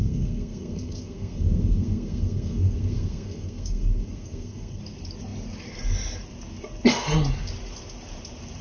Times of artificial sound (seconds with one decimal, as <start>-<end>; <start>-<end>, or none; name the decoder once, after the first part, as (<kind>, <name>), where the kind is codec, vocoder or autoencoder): 0.0-4.8 (codec, SNAC)